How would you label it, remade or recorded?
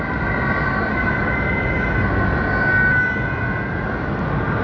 recorded